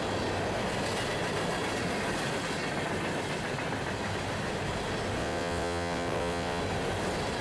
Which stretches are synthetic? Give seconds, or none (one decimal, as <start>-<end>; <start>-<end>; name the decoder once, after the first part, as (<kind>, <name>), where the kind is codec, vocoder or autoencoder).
5.2-6.6 (vocoder, WaveNeXt)